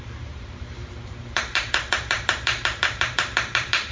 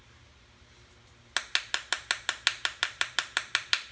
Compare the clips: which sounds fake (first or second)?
first